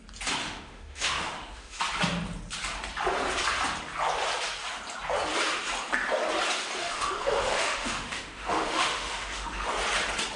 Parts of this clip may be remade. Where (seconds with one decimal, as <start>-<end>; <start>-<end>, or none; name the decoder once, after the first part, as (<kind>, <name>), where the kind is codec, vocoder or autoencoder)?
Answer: 0.4-1.8 (autoencoder, DAC-VAE); 6.8-9.7